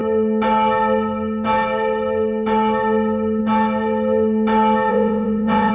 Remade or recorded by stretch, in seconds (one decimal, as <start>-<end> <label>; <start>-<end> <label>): 0.0-4.9 recorded; 4.9-5.7 remade